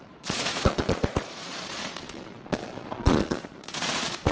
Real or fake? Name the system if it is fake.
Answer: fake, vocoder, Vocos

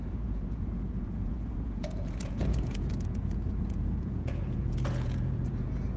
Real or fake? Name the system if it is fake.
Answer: fake, vocoder, Vocos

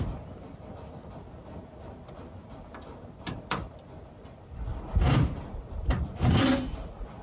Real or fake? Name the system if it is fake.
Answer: real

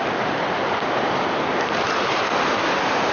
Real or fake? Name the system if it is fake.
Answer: real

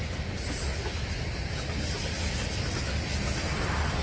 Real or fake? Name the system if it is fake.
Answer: real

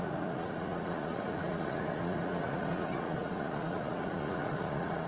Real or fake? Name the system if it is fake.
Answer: fake, vocoder, Vocos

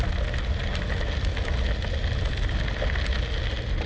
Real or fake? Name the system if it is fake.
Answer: real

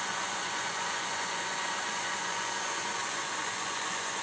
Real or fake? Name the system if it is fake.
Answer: fake, vocoder, Vocos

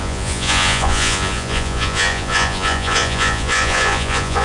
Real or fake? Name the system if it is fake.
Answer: fake, vocoder, Vocos